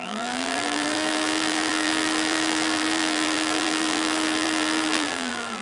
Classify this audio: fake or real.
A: fake